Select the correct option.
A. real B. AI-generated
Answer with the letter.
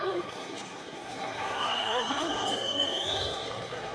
B